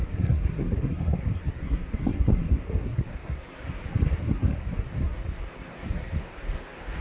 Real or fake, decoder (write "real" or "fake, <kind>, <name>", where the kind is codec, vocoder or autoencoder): fake, codec, SNAC